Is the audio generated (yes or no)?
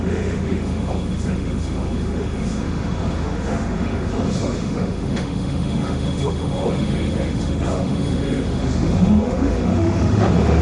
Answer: yes